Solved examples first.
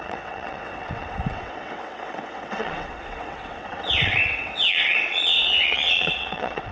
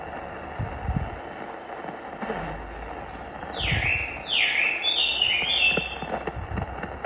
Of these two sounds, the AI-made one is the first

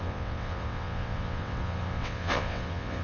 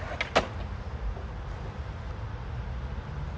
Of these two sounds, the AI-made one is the first